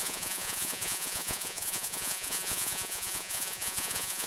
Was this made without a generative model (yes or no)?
no